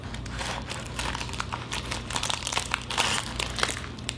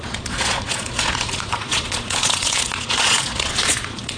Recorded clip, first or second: first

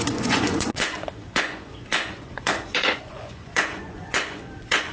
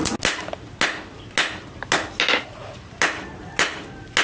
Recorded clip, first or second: second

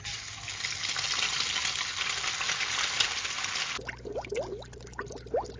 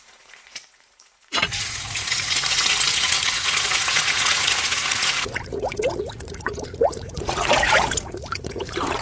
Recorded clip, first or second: first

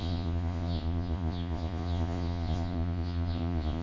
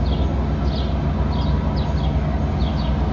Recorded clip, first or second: second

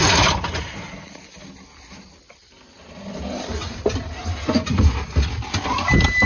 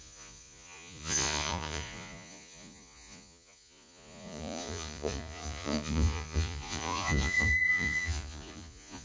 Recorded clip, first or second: first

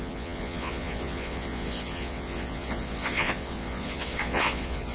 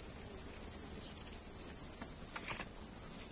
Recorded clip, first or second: second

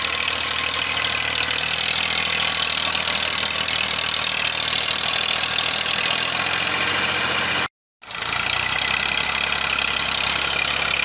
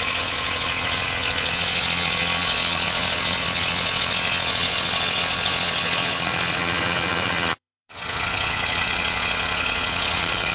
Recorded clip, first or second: first